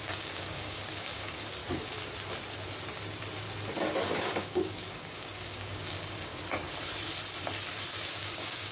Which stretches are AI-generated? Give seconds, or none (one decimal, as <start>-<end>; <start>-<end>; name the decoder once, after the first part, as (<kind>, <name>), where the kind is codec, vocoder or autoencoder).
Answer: 0.0-1.6 (codec, DAC); 4.1-6.3; 8.2-8.7